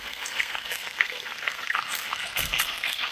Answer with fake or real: fake